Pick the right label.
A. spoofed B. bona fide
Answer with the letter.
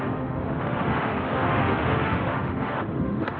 A